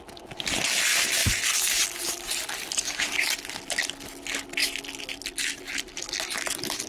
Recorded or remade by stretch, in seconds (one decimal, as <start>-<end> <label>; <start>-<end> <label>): 0.0-6.9 recorded